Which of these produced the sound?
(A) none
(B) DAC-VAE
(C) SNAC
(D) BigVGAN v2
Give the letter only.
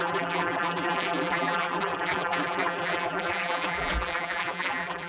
D